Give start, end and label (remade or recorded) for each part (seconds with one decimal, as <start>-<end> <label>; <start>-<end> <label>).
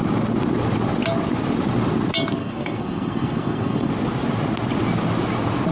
0.0-2.4 recorded; 2.4-3.9 remade; 3.9-5.7 recorded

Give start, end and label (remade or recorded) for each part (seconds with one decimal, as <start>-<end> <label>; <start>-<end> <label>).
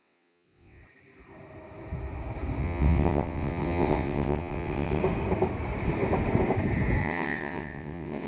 0.0-0.8 remade; 0.8-2.6 recorded; 2.6-5.0 remade; 5.0-7.0 recorded; 7.0-8.3 remade